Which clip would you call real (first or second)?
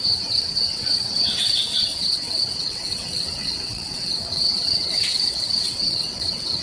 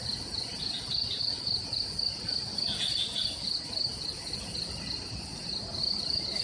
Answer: second